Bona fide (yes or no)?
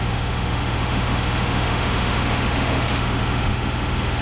no